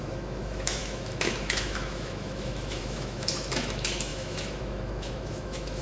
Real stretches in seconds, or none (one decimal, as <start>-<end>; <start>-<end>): none